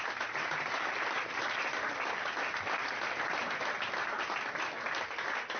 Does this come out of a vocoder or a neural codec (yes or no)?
no